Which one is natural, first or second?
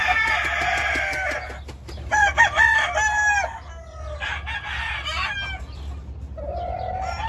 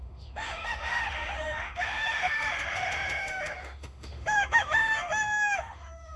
first